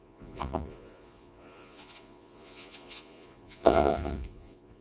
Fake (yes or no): yes